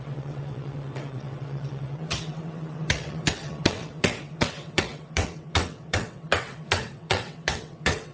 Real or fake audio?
fake